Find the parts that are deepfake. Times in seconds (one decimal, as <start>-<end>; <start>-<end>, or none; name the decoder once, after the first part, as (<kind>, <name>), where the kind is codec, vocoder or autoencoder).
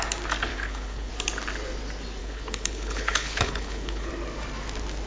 0.5-1.1 (codec, HILCodec); 2.2-4.1